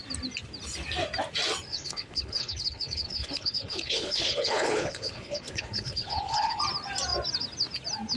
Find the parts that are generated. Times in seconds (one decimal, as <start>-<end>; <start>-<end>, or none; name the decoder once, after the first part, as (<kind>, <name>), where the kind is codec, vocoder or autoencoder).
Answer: 1.7-6.6 (codec, HILCodec)